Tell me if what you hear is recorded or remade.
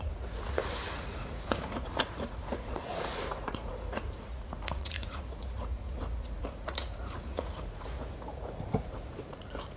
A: remade